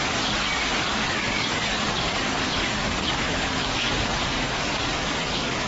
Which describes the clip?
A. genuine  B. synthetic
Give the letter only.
B